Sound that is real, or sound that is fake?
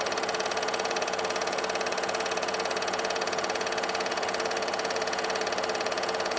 fake